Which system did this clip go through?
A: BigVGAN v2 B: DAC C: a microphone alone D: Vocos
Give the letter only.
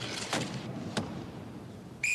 A